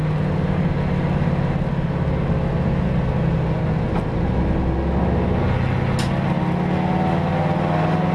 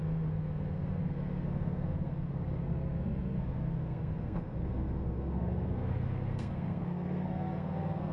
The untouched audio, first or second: first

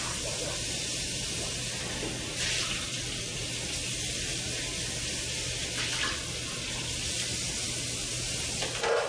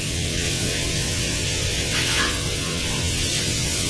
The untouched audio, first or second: first